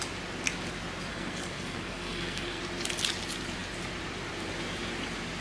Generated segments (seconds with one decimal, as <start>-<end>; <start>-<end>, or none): 1.1-2.6